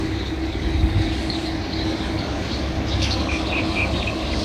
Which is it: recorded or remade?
remade